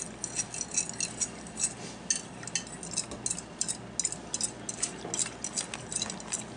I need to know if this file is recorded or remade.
recorded